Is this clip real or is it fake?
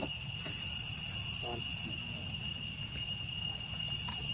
real